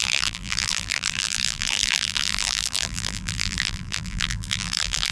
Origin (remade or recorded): remade